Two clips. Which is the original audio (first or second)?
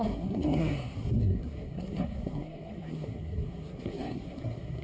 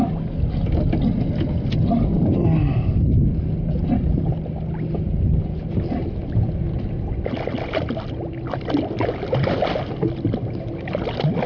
second